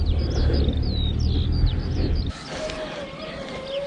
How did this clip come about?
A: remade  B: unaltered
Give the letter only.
B